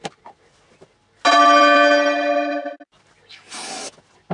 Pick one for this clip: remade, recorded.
recorded